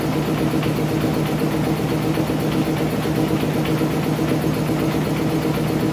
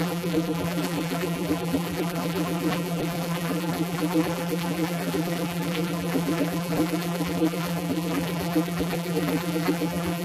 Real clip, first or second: first